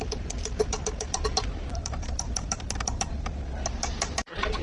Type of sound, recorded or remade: remade